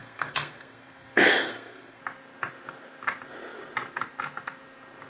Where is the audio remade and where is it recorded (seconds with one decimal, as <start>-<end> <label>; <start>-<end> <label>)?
0.0-2.0 remade; 2.0-5.1 recorded